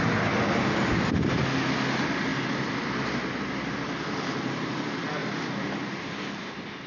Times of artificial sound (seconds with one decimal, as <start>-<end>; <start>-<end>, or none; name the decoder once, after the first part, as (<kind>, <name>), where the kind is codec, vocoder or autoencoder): none